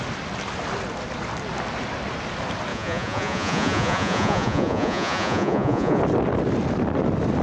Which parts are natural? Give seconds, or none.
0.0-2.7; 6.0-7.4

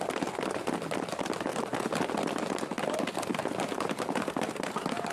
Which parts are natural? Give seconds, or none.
0.0-5.1

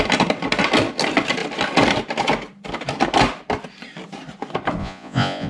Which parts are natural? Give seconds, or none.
0.0-4.8

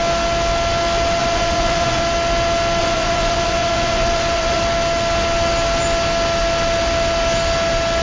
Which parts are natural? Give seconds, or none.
0.0-1.2; 2.0-2.8; 4.6-8.0